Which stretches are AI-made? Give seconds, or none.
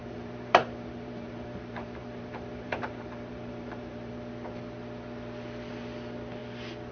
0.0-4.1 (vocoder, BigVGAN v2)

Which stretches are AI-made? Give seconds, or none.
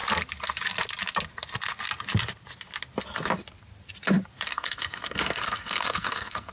4.5-6.5 (codec, SNAC)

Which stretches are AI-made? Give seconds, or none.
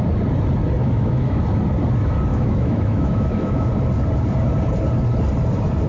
0.8-1.4 (autoencoder, DAC-VAE); 2.3-3.7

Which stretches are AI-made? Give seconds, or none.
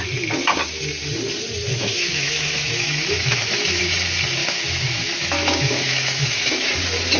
1.7-3.8 (autoencoder, DAC-VAE); 4.4-6.7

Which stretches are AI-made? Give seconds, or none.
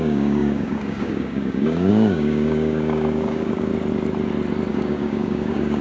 0.0-3.7 (codec, DAC); 4.7-5.8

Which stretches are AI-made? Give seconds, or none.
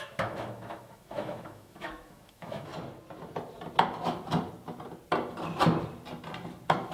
0.0-2.7 (autoencoder, DAC-VAE)